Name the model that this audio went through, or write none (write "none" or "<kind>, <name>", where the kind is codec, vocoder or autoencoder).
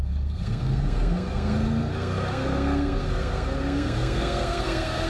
codec, SNAC